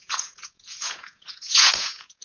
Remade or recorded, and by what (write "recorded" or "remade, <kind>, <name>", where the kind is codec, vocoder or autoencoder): remade, vocoder, Vocos